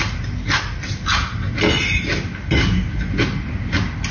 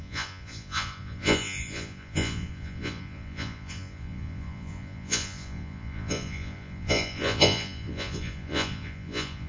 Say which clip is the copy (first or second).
second